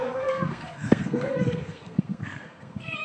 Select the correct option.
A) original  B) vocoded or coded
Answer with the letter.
B